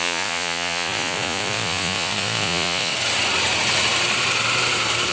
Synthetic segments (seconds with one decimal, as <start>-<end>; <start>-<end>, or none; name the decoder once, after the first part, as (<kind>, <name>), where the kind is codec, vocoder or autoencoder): 0.0-2.9 (vocoder, Vocos)